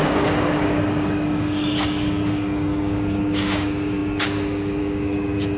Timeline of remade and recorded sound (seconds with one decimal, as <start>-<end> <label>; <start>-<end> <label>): 0.0-5.6 remade